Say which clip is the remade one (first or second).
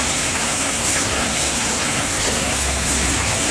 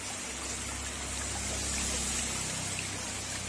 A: first